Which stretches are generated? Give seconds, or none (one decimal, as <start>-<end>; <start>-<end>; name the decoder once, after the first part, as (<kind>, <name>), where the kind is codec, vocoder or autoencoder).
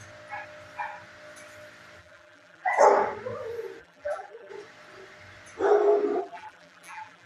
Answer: 2.0-2.7 (vocoder, BigVGAN v2); 3.8-4.5; 6.2-7.3